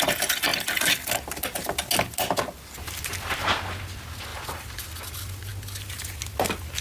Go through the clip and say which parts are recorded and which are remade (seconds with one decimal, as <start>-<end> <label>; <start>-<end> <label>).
0.0-0.5 recorded; 0.5-1.1 remade; 1.1-4.3 recorded; 4.3-5.0 remade; 5.0-6.8 recorded